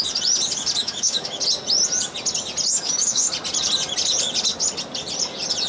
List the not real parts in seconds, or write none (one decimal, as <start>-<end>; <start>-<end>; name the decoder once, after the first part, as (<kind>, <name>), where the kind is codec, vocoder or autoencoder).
0.8-1.4 (autoencoder, DAC-VAE); 2.7-3.3